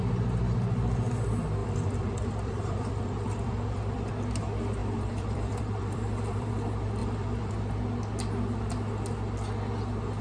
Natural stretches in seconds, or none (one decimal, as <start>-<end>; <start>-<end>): 0.0-1.6; 4.1-4.8; 6.5-7.0; 7.5-10.2